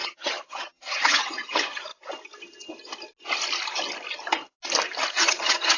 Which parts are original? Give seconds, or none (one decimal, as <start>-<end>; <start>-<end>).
1.9-5.1